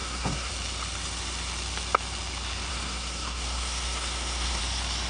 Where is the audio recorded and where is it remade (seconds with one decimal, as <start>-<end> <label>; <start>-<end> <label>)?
0.0-0.5 remade; 0.5-2.7 recorded; 2.7-4.6 remade; 4.6-5.1 recorded